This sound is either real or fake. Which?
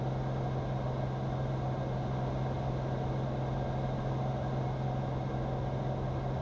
real